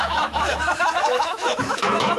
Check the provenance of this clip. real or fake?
fake